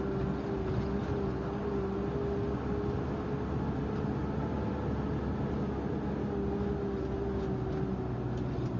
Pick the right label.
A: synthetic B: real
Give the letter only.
B